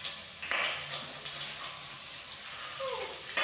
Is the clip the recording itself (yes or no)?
yes